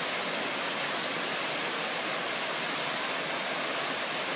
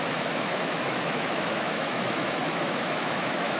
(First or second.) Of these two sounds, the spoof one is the second